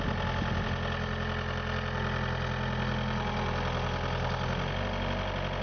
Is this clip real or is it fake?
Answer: real